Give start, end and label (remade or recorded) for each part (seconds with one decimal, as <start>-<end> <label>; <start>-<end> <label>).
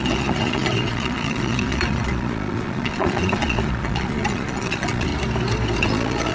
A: 0.0-5.1 remade; 5.1-5.8 recorded; 5.8-6.3 remade